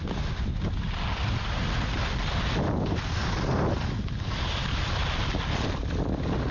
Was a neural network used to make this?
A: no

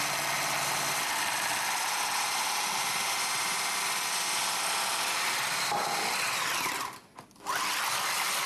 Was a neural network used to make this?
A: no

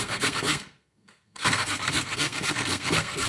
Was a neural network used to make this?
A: yes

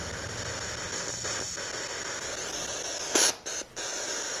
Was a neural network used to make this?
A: no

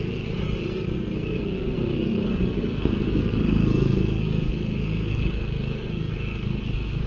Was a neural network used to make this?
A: yes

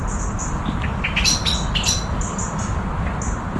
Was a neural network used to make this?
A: no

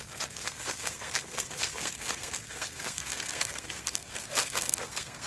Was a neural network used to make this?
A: yes